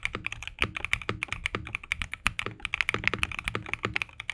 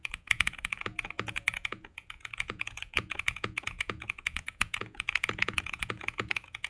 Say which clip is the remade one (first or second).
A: second